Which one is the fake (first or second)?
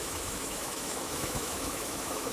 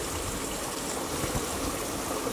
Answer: first